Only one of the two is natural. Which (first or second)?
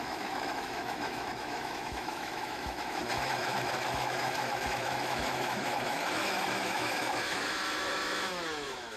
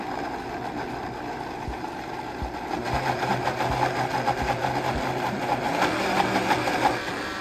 second